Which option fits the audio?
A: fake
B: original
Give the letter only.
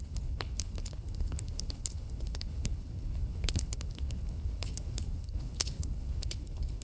A